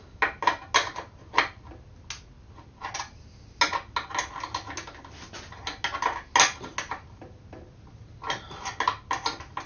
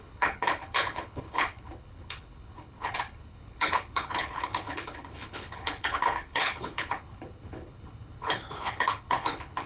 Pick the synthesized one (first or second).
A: second